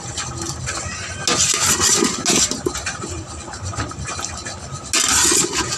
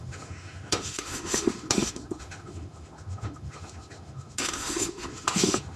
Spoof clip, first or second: second